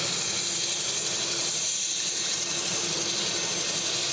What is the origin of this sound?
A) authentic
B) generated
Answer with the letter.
A